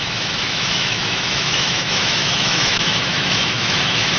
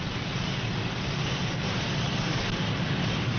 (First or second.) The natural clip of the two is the second